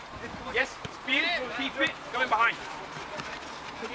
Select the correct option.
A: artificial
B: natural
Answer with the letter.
A